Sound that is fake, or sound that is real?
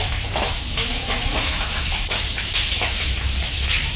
fake